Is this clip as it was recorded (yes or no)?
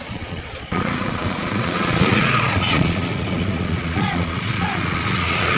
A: no